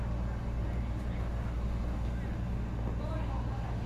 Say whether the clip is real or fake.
real